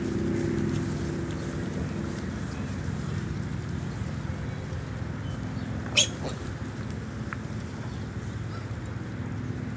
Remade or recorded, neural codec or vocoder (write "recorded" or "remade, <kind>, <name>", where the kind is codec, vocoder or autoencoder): recorded